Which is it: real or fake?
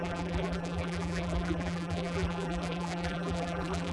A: fake